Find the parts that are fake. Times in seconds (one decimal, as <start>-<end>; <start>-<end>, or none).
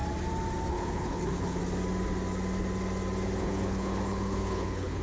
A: 0.7-1.6; 3.4-5.0